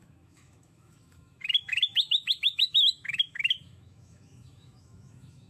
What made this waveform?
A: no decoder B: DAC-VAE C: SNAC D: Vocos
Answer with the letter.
B